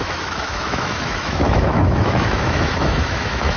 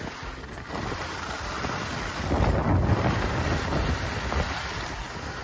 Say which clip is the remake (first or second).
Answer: first